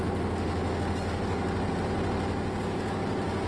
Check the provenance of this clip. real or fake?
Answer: real